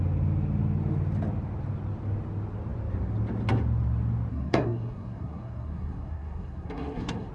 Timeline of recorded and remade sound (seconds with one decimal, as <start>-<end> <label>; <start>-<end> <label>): 0.0-4.3 recorded; 4.3-7.3 remade